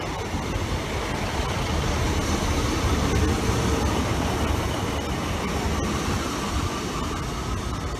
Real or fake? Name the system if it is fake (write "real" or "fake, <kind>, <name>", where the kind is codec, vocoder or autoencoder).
real